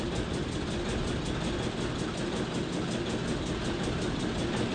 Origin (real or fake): real